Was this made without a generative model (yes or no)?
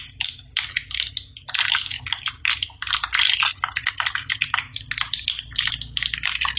yes